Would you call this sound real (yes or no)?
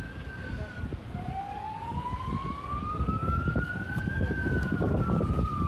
no